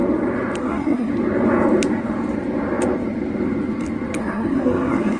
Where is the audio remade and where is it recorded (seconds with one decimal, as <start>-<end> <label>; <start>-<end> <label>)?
0.0-0.6 recorded; 0.6-1.1 remade; 1.1-4.2 recorded; 4.2-5.2 remade